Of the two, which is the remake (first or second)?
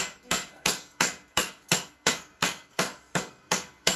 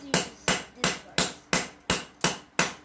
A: first